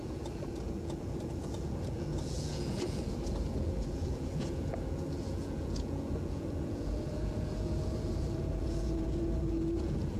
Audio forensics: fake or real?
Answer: fake